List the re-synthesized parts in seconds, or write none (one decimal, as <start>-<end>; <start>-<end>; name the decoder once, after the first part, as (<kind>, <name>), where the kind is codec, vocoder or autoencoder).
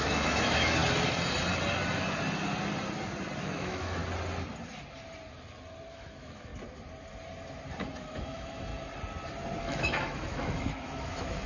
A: 0.0-0.8 (autoencoder, DAC-VAE); 3.4-4.0; 5.9-6.5; 8.0-8.7; 9.6-11.5